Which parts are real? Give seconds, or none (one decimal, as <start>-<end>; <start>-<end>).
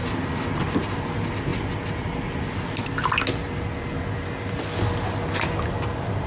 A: 0.0-6.3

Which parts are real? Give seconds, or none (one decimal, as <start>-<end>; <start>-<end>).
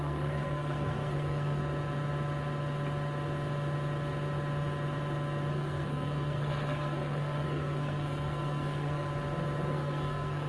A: 1.6-5.5; 9.1-9.7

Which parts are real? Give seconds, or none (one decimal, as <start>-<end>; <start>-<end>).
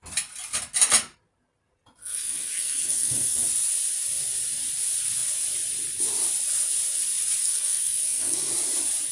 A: 0.0-2.0; 3.4-7.4; 8.5-9.1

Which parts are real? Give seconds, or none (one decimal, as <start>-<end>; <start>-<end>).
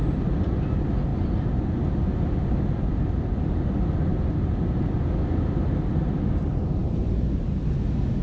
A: 0.0-6.8; 7.4-8.2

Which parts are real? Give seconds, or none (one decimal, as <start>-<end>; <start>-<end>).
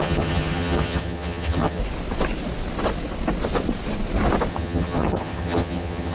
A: 1.8-4.5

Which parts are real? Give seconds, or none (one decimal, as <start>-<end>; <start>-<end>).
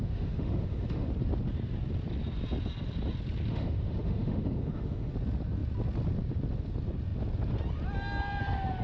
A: 1.1-3.5; 5.1-8.8